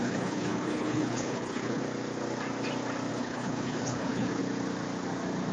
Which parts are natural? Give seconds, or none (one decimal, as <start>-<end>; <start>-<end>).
1.8-3.1; 4.4-5.5